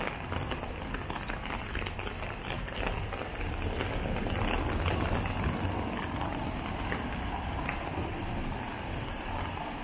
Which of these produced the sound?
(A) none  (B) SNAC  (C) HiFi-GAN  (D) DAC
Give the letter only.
A